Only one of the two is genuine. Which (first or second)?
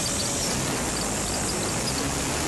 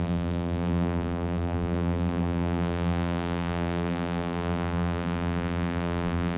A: first